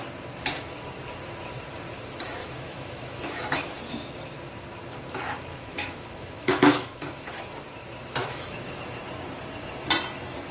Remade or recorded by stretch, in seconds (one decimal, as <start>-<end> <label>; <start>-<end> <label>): 0.0-2.4 recorded; 2.4-3.8 remade; 3.8-5.5 recorded; 5.5-7.4 remade; 7.4-8.2 recorded; 8.2-8.8 remade; 8.8-10.5 recorded

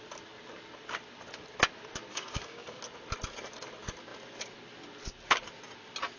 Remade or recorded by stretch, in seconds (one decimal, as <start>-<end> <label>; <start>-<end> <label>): 0.0-2.1 recorded; 2.1-2.8 remade; 2.8-6.2 recorded

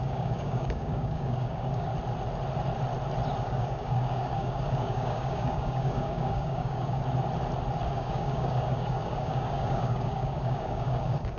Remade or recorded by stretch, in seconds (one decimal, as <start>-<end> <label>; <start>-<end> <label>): 0.0-1.9 remade; 1.9-3.4 recorded; 3.4-7.0 remade; 7.0-7.9 recorded; 7.9-11.4 remade

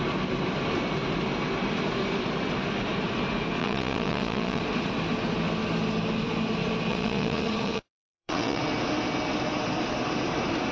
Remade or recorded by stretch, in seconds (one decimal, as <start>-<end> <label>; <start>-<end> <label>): 0.0-3.6 recorded; 3.6-4.6 remade; 4.6-6.9 recorded; 6.9-8.6 remade; 8.6-10.7 recorded

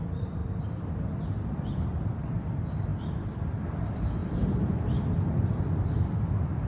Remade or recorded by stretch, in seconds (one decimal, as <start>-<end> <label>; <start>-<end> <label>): 0.0-0.4 remade; 0.4-1.6 recorded; 1.6-6.7 remade

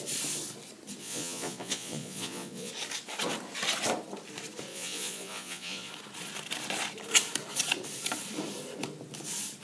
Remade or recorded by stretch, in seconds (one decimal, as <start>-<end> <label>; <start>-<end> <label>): 0.0-1.0 recorded; 1.0-2.7 remade; 2.7-4.7 recorded; 4.7-5.9 remade; 5.9-9.6 recorded